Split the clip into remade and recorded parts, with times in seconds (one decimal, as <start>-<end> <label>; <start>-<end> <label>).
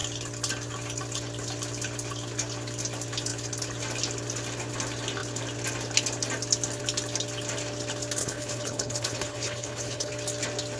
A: 0.0-8.2 recorded; 8.2-10.1 remade; 10.1-10.8 recorded